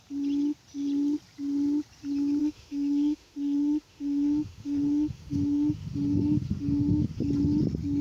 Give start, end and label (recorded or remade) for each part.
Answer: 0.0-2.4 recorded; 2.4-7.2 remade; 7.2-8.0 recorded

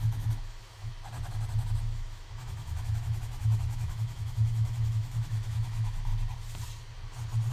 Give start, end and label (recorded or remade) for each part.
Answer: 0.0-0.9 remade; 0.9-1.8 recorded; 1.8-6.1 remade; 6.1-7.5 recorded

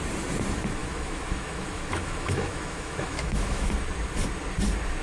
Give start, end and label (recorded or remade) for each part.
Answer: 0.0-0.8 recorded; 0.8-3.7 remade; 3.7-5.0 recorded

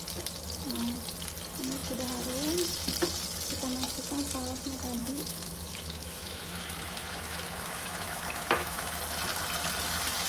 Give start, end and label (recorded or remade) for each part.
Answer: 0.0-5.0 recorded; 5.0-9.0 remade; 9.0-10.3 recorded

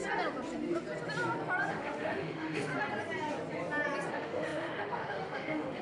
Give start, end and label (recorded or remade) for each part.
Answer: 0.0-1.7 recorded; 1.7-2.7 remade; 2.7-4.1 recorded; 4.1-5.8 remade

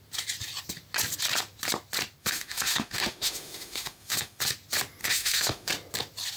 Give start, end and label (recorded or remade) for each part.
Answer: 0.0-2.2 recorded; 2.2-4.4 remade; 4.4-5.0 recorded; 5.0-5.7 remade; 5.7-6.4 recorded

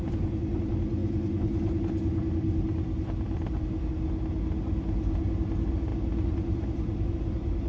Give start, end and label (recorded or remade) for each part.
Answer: 0.0-7.7 recorded